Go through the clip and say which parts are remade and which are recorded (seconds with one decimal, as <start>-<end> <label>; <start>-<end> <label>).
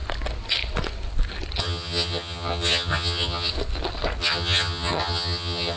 0.0-1.6 recorded; 1.6-3.5 remade; 3.5-4.2 recorded; 4.2-5.8 remade